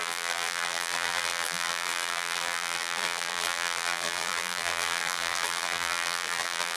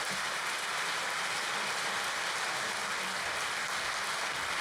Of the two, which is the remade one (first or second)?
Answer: first